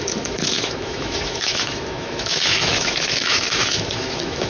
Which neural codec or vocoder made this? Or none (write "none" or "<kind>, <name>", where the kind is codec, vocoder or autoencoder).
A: autoencoder, DAC-VAE